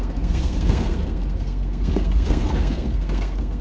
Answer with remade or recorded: remade